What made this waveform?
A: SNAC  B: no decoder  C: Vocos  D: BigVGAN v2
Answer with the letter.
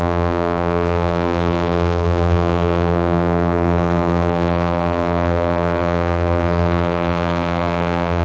D